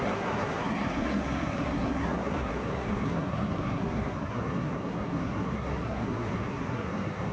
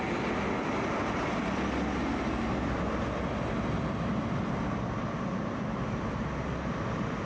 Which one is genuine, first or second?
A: second